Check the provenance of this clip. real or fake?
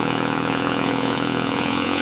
fake